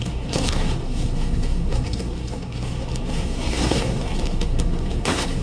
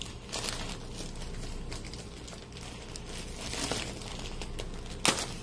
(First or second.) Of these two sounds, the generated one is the first